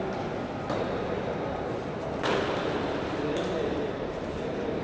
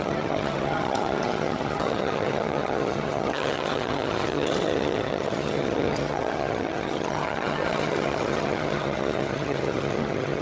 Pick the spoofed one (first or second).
second